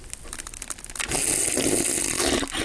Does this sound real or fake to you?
real